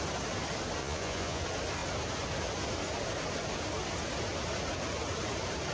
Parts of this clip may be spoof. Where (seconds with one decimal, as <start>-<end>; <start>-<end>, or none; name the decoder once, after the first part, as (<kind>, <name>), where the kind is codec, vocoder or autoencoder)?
0.8-1.4 (vocoder, Vocos)